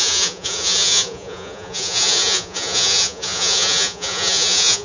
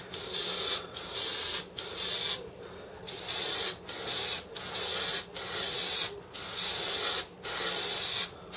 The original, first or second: second